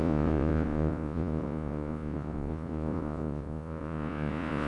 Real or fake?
fake